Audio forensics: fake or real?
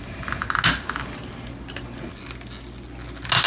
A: real